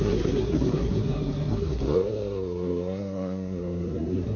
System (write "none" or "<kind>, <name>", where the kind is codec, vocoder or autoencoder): codec, SNAC